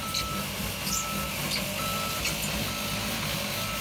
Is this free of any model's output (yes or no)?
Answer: yes